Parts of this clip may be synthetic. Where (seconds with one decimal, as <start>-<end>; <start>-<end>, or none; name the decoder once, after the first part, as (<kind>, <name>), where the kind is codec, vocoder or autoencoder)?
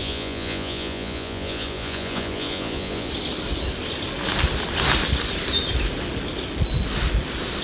0.0-3.1 (vocoder, Vocos)